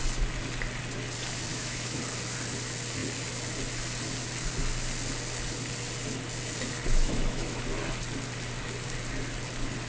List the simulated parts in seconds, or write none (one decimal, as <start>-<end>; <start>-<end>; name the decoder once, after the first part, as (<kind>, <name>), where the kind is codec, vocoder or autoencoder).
1.5-2.0 (autoencoder, DAC-VAE); 6.9-7.6